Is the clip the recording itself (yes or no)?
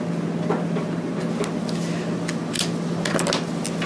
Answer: yes